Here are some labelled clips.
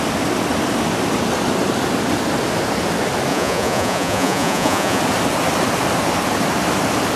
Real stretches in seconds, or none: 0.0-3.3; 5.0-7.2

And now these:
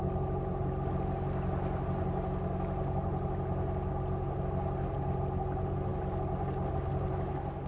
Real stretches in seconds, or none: 0.0-7.7

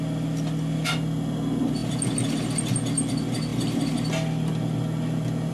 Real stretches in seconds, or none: 0.0-5.5

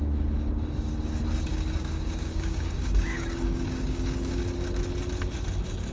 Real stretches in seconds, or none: 0.0-1.5; 4.4-5.9